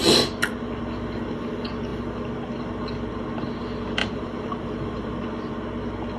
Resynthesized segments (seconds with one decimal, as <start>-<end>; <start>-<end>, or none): 4.0-5.1